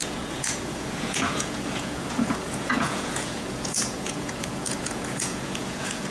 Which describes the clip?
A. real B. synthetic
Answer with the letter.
B